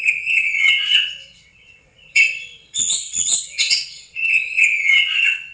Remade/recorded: remade